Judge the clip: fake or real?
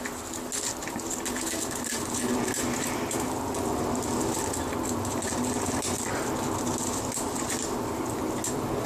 real